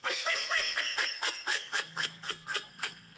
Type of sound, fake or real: fake